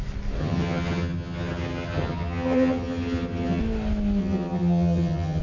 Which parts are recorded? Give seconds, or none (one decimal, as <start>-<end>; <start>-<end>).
0.0-0.4; 3.6-4.2